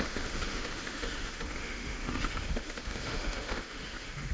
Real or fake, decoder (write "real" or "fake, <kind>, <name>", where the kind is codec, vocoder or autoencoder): fake, autoencoder, DAC-VAE